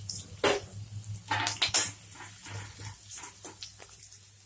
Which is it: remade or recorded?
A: recorded